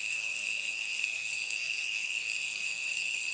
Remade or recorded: remade